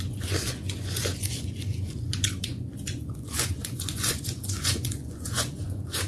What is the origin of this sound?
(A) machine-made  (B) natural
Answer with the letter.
A